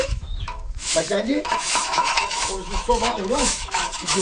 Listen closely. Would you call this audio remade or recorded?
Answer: remade